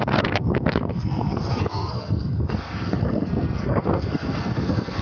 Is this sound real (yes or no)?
no